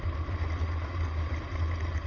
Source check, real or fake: real